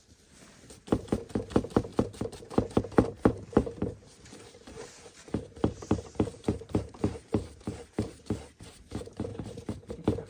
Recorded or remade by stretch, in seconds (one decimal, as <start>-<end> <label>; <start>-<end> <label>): 0.0-1.9 recorded; 1.9-2.4 remade; 2.4-5.6 recorded; 5.6-8.2 remade; 8.2-9.3 recorded; 9.3-9.9 remade; 9.9-10.3 recorded